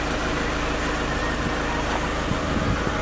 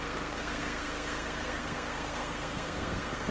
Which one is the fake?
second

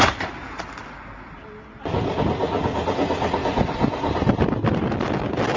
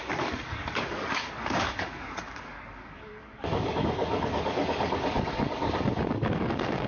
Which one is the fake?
second